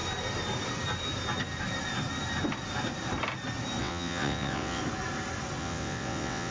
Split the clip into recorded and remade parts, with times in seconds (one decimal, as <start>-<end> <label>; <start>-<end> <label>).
0.0-3.8 recorded; 3.8-4.8 remade; 4.8-5.6 recorded; 5.6-6.5 remade